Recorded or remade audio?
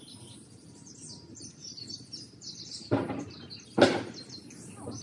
recorded